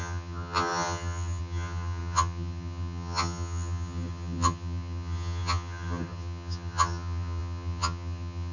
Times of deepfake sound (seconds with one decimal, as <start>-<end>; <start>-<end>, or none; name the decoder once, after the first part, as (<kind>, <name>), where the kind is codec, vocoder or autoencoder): 0.0-8.5 (vocoder, HiFi-GAN)